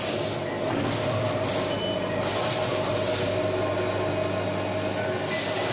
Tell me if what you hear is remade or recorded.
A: recorded